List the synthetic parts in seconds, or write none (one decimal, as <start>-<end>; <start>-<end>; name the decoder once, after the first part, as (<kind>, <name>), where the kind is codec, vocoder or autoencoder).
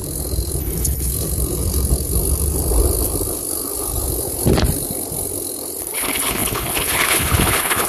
0.6-1.1 (codec, HILCodec); 5.8-7.9